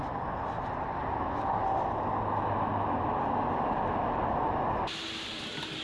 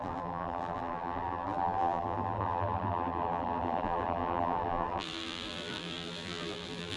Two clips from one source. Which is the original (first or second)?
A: first